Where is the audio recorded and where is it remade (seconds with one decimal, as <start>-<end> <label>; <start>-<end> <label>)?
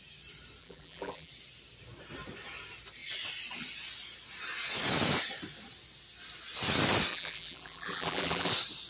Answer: 0.0-0.6 recorded; 0.6-1.3 remade; 1.3-7.1 recorded; 7.1-8.5 remade; 8.5-8.9 recorded